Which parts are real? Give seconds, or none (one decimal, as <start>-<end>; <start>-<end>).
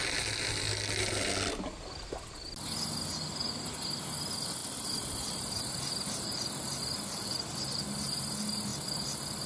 0.0-4.6; 7.8-8.7